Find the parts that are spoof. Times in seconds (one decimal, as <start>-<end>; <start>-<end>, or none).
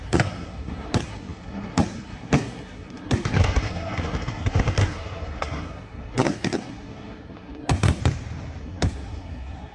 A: 0.0-8.0; 8.6-9.7